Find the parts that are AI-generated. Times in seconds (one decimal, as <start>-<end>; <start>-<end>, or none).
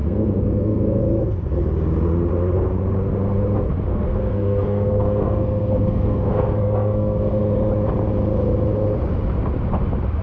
0.0-1.0; 3.9-7.4